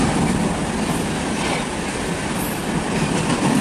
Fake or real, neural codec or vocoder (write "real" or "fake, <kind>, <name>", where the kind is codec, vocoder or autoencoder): real